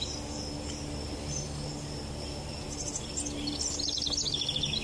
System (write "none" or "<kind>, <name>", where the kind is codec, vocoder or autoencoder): none